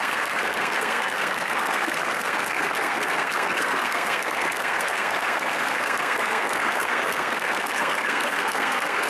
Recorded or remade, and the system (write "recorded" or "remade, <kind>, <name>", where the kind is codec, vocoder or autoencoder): remade, codec, SNAC